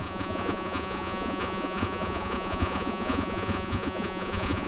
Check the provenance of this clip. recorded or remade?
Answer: remade